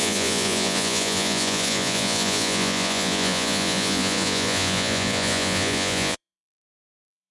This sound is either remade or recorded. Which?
remade